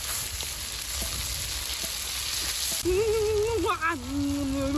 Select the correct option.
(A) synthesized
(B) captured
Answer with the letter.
B